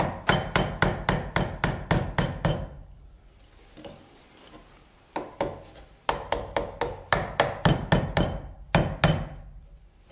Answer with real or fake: real